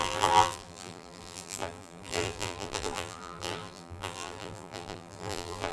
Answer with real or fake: fake